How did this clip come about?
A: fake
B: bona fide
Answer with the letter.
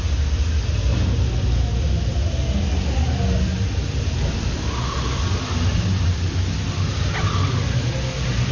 B